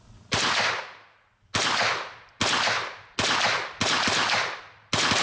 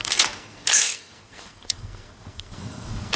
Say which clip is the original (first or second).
first